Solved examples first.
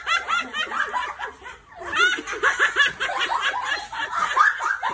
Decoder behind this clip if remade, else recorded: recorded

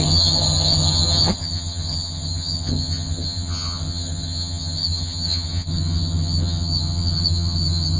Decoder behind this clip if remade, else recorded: remade, vocoder, HiFi-GAN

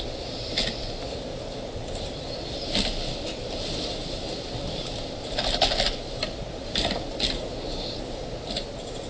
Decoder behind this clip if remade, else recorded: recorded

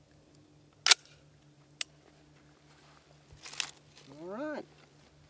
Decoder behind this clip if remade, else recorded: recorded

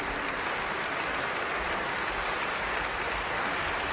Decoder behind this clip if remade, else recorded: recorded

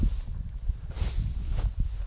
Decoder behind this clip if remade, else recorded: recorded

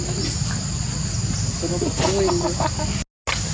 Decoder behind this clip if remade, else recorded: recorded